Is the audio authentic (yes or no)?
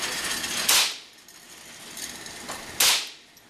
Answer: yes